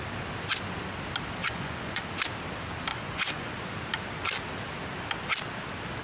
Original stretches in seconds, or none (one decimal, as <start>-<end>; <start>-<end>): 0.0-1.4; 2.0-2.9; 3.5-6.0